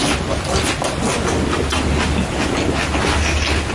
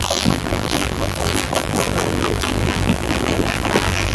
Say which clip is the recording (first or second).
first